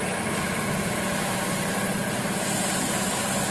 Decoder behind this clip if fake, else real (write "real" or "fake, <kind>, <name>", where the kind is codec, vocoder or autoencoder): real